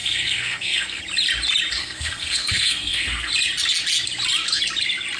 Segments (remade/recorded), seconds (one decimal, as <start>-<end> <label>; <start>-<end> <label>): 0.0-1.0 remade; 1.0-1.8 recorded; 1.8-3.3 remade; 3.3-5.2 recorded